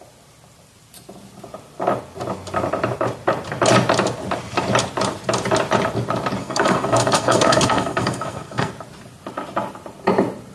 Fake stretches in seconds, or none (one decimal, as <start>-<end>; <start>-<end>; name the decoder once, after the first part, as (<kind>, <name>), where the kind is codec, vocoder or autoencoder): 6.4-8.7 (codec, SNAC)